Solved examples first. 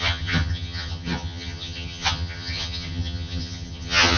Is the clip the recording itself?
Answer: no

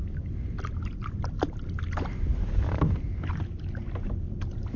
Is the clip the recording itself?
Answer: yes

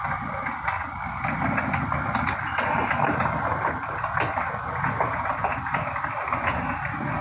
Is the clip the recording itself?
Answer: yes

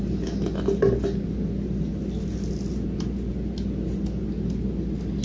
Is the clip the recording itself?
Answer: yes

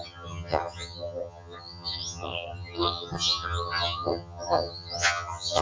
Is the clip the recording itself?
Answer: no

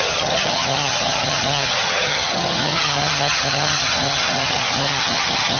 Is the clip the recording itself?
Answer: no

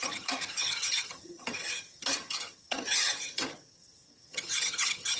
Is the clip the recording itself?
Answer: no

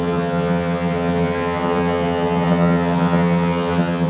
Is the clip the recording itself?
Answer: no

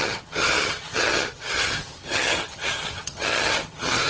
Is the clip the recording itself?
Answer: no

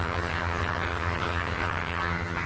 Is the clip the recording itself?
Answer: no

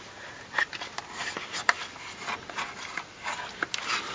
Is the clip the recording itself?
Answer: yes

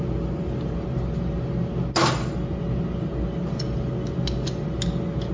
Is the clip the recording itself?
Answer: yes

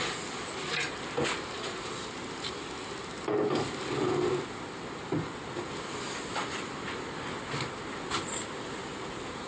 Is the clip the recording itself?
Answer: yes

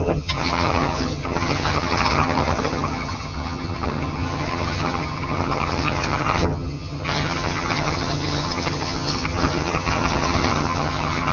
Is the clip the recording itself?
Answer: no